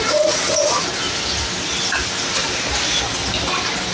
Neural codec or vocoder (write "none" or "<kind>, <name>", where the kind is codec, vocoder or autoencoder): none